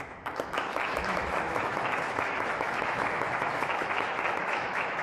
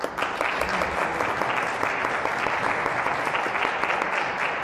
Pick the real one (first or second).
second